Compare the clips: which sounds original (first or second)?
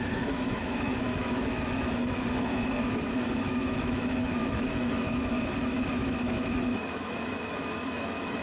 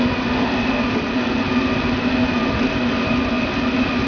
second